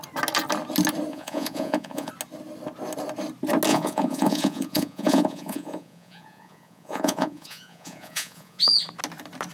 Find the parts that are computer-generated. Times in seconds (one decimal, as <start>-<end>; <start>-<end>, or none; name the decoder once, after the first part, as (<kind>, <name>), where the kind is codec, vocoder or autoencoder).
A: 1.1-2.1 (vocoder, Vocos); 3.7-8.6